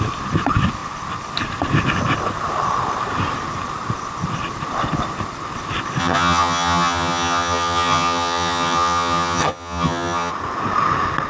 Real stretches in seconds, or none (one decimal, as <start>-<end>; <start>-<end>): 0.0-6.0; 10.3-11.3

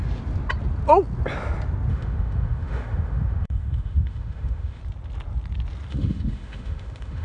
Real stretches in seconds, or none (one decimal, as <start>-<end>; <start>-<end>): 0.0-1.9; 4.8-5.9

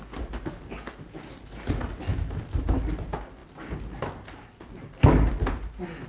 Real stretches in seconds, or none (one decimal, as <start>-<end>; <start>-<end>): 0.0-6.1

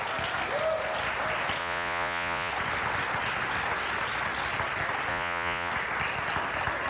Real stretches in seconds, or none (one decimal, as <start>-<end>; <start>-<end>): 0.0-1.6; 2.5-5.1; 5.7-6.9

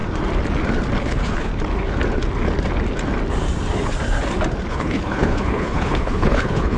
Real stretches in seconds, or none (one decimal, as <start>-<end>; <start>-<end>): 0.0-1.0; 1.5-4.7

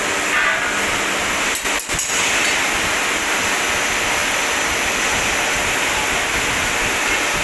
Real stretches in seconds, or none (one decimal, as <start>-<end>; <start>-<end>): 0.0-7.4